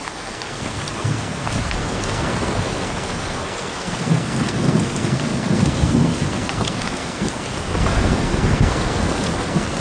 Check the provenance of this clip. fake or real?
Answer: fake